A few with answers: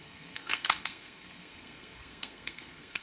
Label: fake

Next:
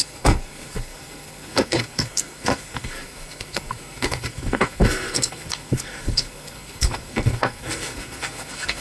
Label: fake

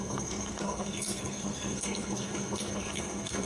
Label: fake